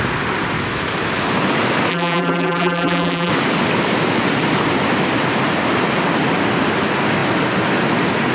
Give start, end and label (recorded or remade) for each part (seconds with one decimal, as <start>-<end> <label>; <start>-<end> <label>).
0.0-1.9 recorded; 1.9-3.3 remade; 3.3-8.3 recorded